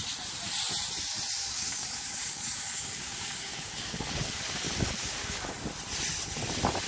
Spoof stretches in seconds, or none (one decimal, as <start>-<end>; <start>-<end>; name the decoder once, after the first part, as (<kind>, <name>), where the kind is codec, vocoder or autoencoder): 1.4-5.5 (codec, DAC)